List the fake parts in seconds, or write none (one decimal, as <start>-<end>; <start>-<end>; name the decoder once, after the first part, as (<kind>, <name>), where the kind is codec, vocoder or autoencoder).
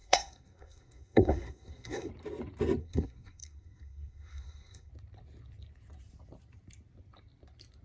0.0-2.1 (codec, SNAC); 2.8-4.9